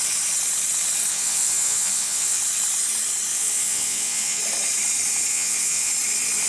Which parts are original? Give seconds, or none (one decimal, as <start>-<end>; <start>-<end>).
0.0-1.1; 2.4-3.3; 4.4-5.3; 5.9-6.5